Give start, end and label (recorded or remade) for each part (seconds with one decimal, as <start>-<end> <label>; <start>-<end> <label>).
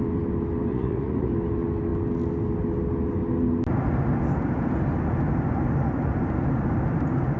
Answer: 0.0-0.7 recorded; 0.7-1.3 remade; 1.3-7.4 recorded